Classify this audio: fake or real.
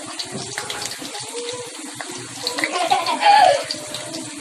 real